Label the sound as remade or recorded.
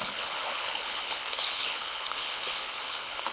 remade